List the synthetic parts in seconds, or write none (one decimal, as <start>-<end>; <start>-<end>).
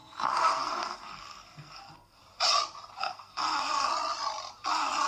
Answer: 0.0-2.2; 3.0-3.9